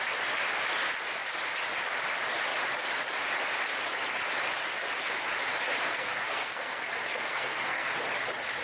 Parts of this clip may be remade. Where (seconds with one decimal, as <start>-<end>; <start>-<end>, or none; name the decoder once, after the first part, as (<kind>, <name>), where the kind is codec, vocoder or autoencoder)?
5.9-8.0 (codec, SNAC)